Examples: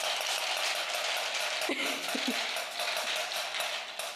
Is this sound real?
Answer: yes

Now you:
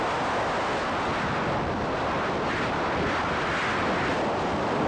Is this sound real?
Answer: no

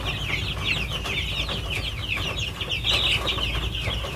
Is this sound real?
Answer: yes